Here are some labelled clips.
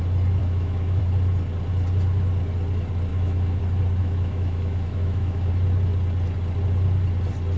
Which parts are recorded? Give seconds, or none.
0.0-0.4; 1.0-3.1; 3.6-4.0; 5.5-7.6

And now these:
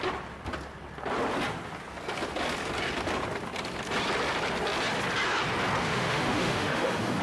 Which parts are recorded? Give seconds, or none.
0.0-5.8

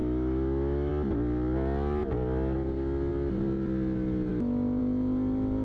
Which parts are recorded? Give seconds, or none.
0.9-4.3; 4.8-5.6

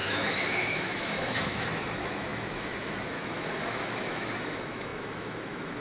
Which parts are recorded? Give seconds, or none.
none